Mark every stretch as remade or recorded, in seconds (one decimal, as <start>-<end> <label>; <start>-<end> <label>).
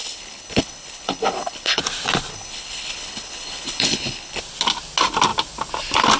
0.0-1.8 remade; 1.8-2.3 recorded; 2.3-4.4 remade; 4.4-6.2 recorded